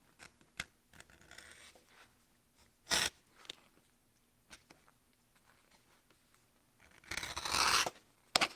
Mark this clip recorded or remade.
recorded